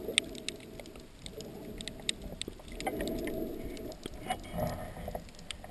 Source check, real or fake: real